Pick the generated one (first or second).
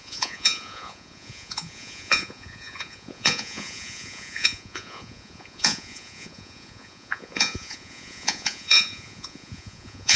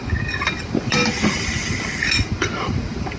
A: first